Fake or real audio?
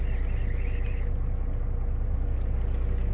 real